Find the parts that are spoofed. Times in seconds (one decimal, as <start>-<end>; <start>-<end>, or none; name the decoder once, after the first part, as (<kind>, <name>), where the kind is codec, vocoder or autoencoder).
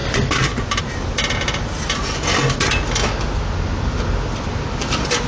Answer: none